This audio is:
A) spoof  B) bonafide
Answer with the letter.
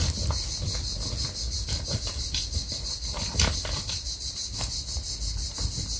B